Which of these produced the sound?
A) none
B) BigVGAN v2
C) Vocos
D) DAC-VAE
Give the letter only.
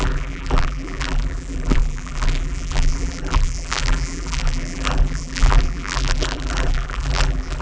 B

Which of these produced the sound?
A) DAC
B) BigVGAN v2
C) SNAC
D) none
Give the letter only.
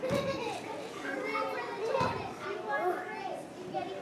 D